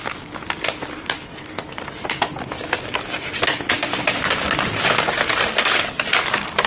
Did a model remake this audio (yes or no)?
no